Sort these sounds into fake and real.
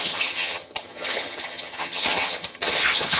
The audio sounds fake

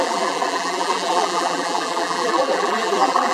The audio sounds fake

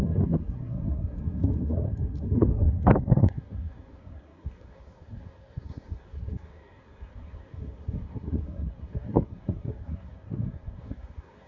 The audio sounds fake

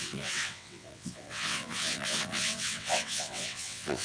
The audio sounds fake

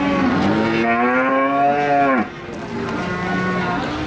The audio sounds real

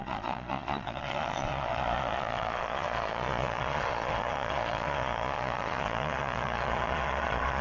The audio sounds fake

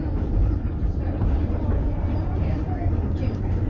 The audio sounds fake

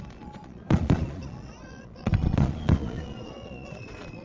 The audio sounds fake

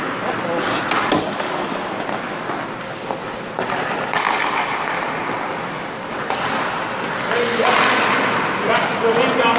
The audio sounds real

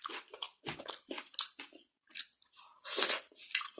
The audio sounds real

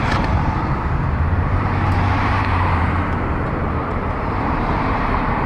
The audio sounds fake